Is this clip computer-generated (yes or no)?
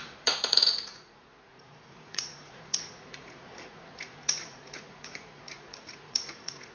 yes